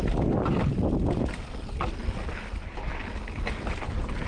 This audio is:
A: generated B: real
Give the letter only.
B